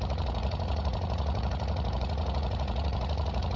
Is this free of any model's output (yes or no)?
no